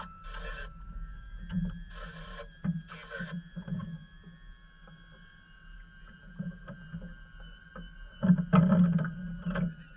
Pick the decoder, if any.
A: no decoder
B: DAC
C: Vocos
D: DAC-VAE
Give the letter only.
A